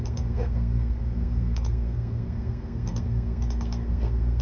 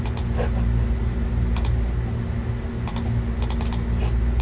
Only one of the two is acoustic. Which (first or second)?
second